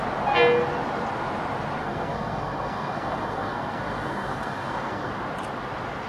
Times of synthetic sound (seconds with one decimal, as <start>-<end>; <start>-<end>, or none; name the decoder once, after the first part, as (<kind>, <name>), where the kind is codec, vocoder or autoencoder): 1.8-5.1 (codec, SNAC)